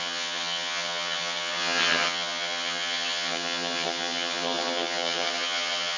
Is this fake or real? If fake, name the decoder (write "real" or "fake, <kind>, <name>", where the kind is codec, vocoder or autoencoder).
fake, vocoder, HiFi-GAN